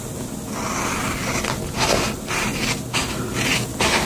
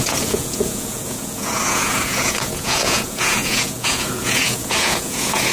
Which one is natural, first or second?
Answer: first